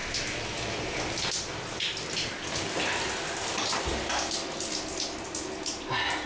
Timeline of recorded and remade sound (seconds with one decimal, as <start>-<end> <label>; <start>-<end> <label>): 0.0-6.3 recorded